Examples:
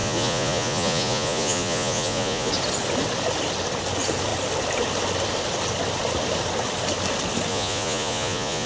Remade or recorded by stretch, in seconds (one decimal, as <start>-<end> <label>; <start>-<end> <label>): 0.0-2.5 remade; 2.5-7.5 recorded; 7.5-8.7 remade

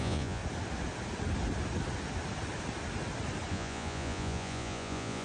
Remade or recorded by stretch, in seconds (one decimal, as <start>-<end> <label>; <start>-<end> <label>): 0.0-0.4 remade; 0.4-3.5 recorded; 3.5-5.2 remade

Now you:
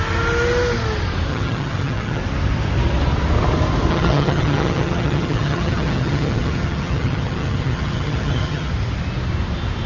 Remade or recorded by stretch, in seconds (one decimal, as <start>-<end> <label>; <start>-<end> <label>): 0.0-1.3 recorded; 1.3-2.2 remade; 2.2-3.9 recorded; 3.9-8.7 remade; 8.7-9.9 recorded